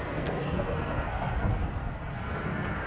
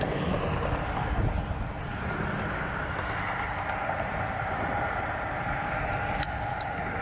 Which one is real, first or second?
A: second